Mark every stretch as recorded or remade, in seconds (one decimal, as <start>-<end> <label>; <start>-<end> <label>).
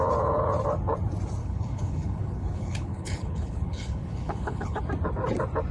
0.0-1.4 recorded; 1.4-4.8 remade; 4.8-5.7 recorded